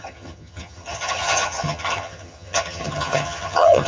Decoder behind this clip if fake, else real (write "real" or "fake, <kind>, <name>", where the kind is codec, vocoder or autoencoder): fake, vocoder, HiFi-GAN